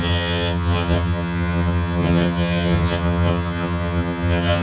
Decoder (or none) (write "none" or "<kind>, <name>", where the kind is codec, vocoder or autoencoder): vocoder, HiFi-GAN